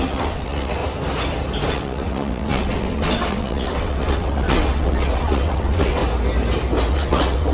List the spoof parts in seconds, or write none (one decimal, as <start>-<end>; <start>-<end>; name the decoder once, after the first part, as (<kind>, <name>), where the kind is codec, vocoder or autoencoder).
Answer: 0.0-0.8 (vocoder, WaveNeXt); 1.7-6.0; 6.9-7.5